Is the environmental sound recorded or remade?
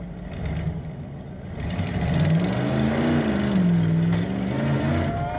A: recorded